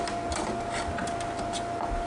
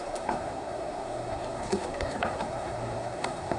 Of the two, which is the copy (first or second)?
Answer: second